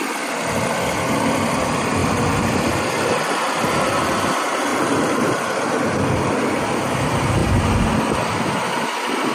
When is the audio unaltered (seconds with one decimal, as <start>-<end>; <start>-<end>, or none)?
0.0-4.7; 6.6-9.3